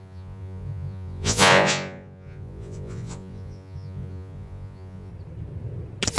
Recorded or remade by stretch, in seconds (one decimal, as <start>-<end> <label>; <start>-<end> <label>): 0.0-5.1 remade; 5.1-6.2 recorded